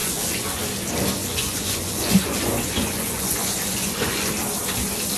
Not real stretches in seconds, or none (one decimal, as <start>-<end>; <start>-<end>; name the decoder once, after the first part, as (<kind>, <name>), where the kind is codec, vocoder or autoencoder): 0.0-0.6 (vocoder, Vocos); 1.2-4.3